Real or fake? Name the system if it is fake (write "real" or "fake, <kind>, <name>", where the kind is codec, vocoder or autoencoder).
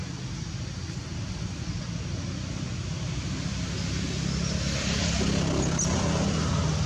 real